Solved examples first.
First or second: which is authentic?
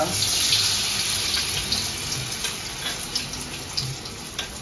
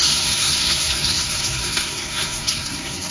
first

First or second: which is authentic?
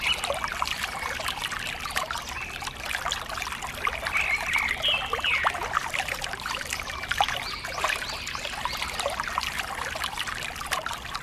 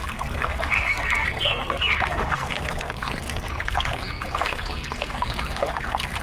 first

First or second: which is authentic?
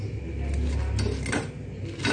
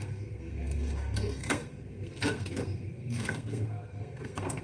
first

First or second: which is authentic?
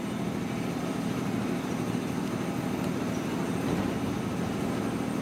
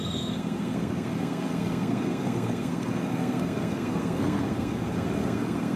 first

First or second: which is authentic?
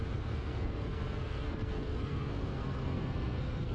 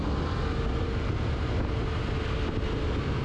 second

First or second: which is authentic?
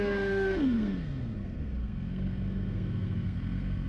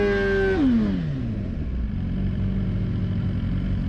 second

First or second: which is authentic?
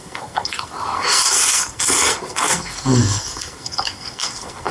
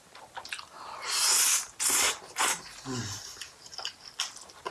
second